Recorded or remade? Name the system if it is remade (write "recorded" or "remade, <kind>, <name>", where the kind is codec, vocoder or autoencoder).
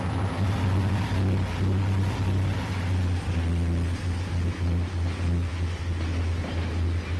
recorded